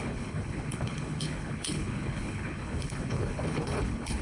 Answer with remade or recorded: remade